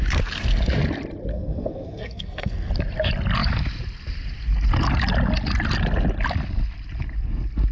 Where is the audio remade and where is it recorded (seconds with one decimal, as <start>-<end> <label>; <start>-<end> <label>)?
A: 0.0-1.3 recorded; 1.3-2.7 remade; 2.7-7.7 recorded